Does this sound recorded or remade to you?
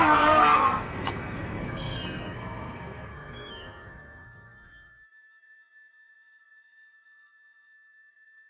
remade